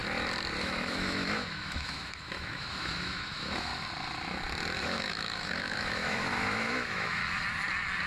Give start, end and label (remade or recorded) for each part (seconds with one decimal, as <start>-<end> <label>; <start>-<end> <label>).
0.0-0.6 recorded; 0.6-3.7 remade; 3.7-4.8 recorded; 4.8-7.2 remade; 7.2-8.1 recorded